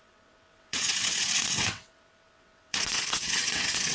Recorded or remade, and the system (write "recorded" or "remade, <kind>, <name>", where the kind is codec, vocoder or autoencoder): remade, vocoder, WaveNeXt